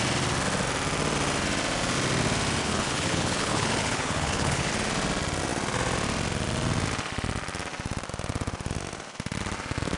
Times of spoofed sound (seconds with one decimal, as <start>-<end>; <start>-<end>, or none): 2.6-4.7